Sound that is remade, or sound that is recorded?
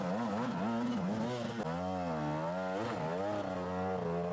recorded